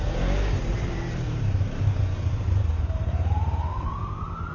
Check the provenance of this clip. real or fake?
fake